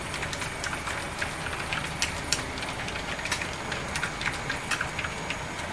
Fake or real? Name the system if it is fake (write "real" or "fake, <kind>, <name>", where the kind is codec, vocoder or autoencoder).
real